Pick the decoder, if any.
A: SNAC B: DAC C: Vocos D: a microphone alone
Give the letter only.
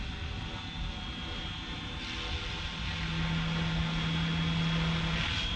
D